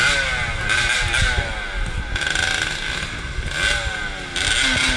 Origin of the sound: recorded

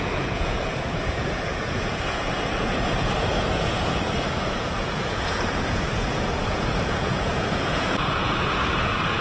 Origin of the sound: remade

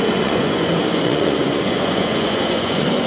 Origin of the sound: remade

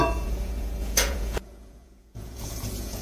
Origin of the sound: remade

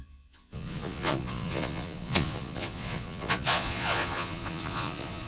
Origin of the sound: remade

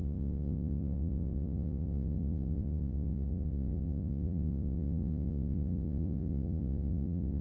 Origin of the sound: remade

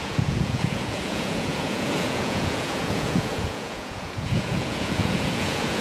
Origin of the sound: remade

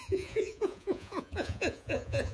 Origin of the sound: remade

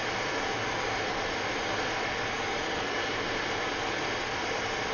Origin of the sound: recorded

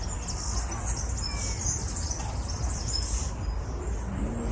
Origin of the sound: recorded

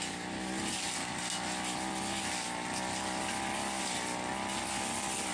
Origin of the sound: recorded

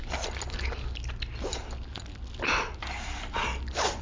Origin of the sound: recorded